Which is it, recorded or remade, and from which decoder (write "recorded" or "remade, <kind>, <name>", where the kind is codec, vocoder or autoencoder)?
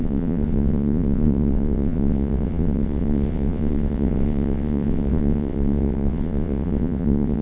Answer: remade, vocoder, WaveNeXt